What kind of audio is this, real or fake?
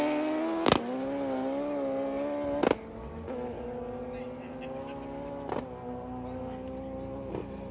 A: real